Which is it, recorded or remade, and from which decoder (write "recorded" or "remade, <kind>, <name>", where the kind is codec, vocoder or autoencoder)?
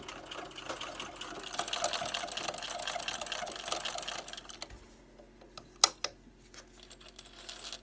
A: recorded